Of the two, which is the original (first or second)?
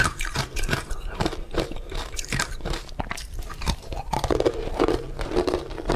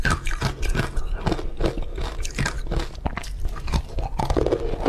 second